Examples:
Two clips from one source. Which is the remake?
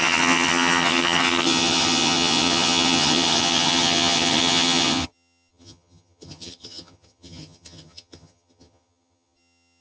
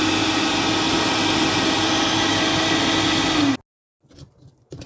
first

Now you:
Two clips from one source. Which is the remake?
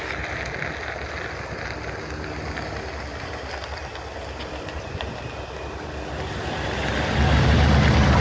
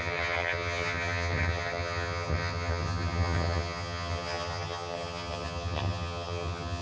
second